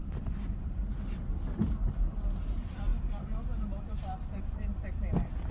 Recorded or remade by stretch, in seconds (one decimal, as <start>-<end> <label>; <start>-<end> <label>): 0.0-1.7 remade; 1.7-5.5 recorded